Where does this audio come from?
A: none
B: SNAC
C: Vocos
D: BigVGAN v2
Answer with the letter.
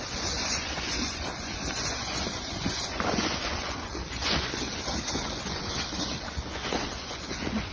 C